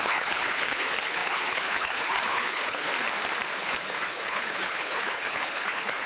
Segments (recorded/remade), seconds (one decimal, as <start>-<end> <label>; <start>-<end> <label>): 0.0-2.9 remade; 2.9-3.6 recorded; 3.6-6.1 remade